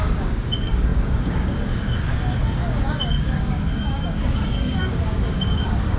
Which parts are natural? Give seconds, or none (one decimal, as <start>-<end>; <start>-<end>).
none